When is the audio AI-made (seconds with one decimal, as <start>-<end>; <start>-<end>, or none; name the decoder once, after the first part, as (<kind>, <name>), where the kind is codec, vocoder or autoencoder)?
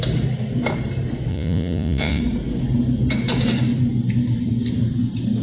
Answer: 1.3-2.2 (vocoder, Vocos)